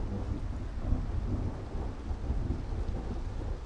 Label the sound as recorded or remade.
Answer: recorded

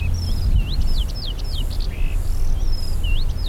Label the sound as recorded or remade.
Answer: recorded